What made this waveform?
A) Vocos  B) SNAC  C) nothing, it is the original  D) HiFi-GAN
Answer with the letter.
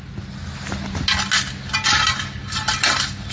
C